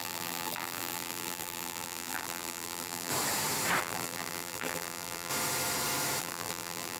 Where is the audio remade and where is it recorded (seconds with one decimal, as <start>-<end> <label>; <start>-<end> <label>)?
0.0-3.1 remade; 3.1-3.8 recorded; 3.8-5.3 remade; 5.3-6.2 recorded; 6.2-7.0 remade